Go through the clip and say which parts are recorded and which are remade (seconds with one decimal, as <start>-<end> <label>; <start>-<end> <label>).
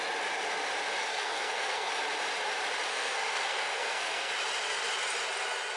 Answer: 0.0-1.1 recorded; 1.1-1.9 remade; 1.9-2.9 recorded; 2.9-4.3 remade; 4.3-5.8 recorded